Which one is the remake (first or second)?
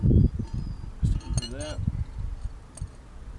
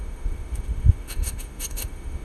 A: second